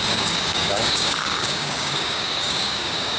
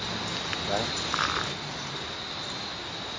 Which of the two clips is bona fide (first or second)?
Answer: second